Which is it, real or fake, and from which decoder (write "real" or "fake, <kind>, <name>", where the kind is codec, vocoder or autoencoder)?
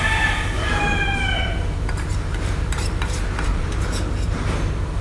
fake, vocoder, BigVGAN v2